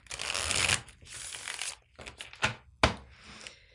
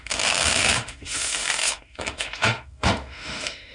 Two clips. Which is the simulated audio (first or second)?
second